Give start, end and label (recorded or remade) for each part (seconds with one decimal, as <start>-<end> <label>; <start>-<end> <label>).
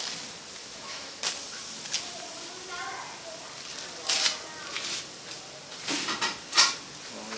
0.0-0.6 recorded; 0.6-1.2 remade; 1.2-7.4 recorded